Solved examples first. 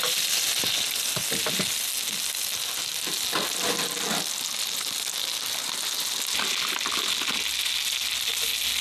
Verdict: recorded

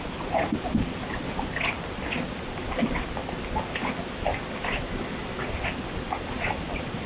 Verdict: recorded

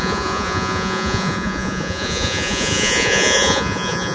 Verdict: remade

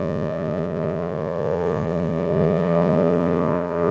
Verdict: remade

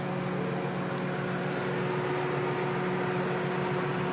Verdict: recorded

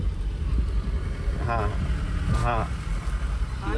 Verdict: recorded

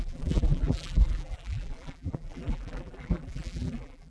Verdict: remade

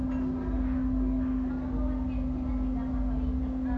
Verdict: recorded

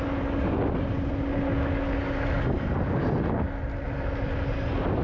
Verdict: recorded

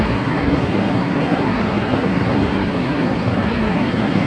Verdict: remade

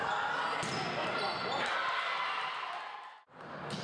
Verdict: recorded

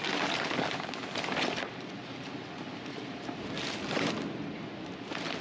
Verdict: recorded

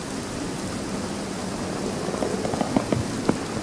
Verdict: recorded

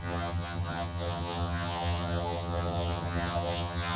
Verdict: remade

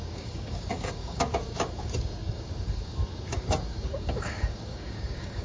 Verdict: remade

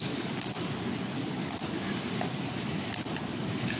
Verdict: recorded